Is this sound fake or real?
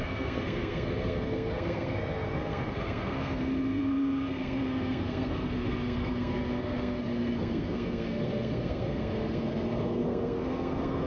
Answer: fake